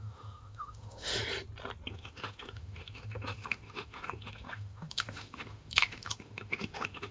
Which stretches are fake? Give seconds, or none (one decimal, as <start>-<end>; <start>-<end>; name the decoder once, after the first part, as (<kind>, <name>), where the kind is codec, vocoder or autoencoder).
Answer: 0.0-1.2 (autoencoder, DAC-VAE); 1.9-7.1